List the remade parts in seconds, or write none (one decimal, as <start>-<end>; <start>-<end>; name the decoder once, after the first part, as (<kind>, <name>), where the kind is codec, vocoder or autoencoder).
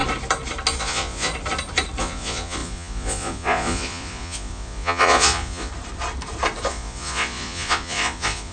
0.8-1.3 (vocoder, Vocos); 2.0-5.7; 6.7-8.5